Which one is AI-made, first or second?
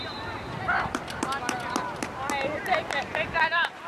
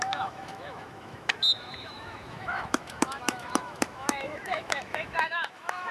second